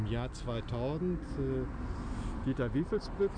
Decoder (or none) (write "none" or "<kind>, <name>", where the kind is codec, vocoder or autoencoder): none